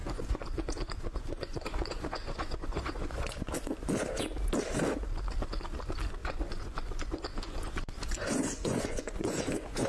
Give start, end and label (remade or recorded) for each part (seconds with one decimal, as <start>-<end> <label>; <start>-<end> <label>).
0.0-3.5 remade; 3.5-6.2 recorded; 6.2-9.9 remade